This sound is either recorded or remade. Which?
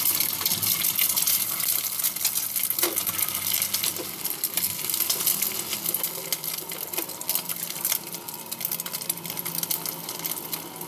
recorded